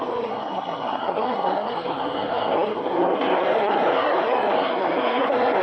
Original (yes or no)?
no